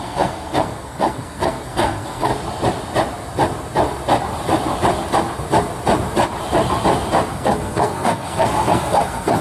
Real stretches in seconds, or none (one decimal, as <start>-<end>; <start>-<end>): 2.3-7.3